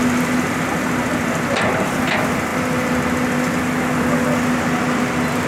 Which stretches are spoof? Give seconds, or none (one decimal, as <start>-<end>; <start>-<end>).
2.5-3.6